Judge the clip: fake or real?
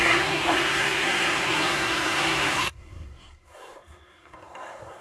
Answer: fake